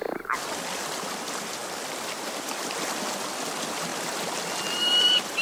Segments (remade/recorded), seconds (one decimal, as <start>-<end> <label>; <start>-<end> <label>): 0.0-5.4 recorded